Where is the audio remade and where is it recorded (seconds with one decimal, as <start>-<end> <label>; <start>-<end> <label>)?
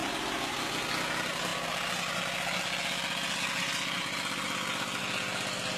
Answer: 0.0-5.8 recorded